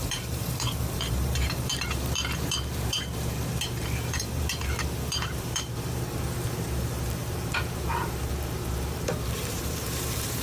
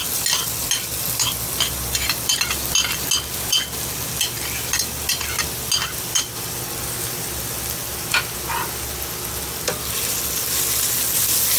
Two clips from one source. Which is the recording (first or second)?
second